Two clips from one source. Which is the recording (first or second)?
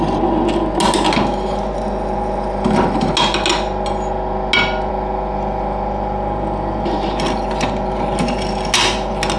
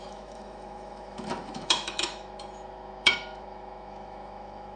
first